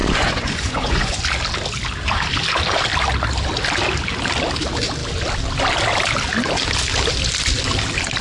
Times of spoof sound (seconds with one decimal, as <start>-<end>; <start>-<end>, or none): 0.0-1.2